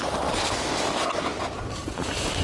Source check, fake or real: real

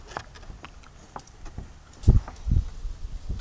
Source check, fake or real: real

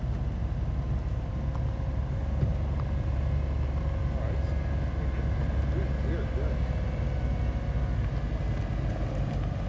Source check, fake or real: real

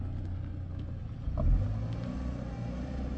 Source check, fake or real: real